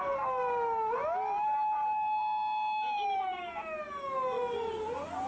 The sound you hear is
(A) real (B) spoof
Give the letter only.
A